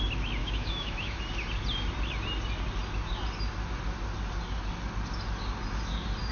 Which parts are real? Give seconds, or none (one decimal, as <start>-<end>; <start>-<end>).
0.0-0.4; 1.2-6.3